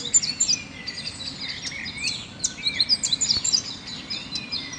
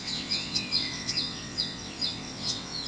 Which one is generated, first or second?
second